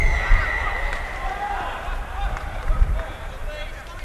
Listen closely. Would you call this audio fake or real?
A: fake